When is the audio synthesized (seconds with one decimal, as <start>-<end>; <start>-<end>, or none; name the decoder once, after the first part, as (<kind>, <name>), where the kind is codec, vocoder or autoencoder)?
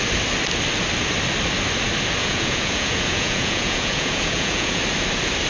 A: 2.2-4.8 (vocoder, Vocos)